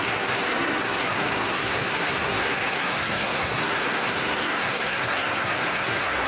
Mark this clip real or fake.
fake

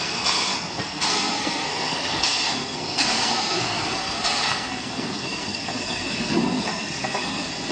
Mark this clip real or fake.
fake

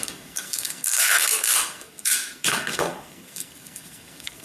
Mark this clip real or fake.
fake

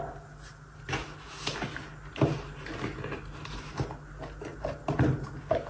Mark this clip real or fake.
real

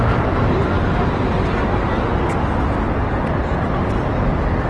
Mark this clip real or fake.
real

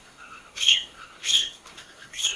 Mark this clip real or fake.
fake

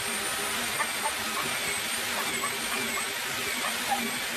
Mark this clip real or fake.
real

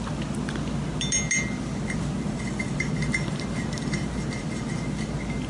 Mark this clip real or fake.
real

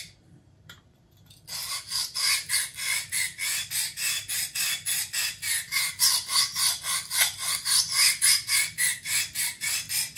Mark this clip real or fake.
real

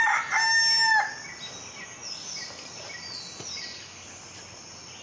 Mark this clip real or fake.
real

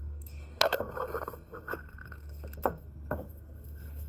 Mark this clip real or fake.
fake